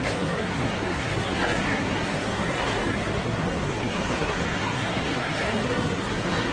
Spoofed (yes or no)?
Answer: yes